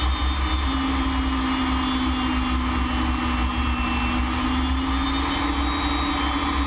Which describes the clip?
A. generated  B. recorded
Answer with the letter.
B